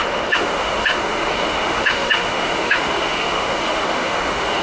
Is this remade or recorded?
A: remade